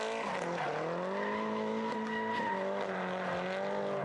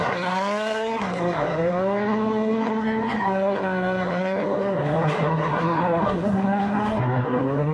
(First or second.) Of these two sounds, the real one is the first